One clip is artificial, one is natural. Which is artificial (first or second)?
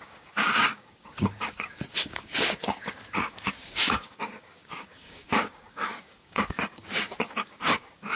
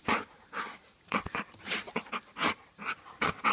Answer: first